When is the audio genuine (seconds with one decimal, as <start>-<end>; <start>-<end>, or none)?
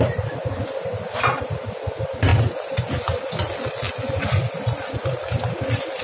0.0-6.0